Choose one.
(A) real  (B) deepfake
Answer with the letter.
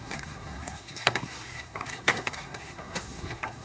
B